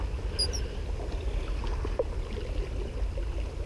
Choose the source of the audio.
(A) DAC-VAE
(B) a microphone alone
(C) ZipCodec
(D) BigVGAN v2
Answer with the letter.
B